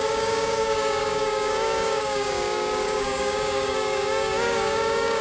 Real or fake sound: fake